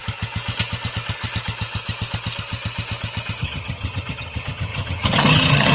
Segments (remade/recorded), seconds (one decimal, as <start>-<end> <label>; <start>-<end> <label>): 0.0-3.4 recorded; 3.4-5.7 remade